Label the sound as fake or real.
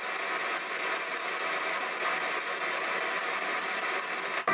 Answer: fake